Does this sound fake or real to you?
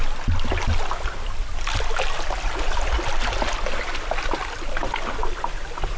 real